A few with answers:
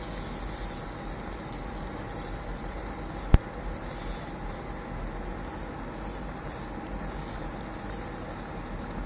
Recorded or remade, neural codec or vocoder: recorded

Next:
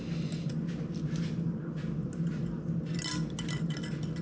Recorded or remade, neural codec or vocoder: recorded